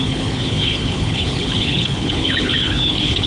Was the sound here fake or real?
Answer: fake